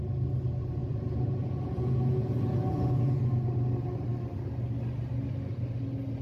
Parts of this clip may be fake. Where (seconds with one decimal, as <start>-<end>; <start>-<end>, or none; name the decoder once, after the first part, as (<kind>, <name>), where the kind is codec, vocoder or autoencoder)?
0.8-3.2 (vocoder, Vocos)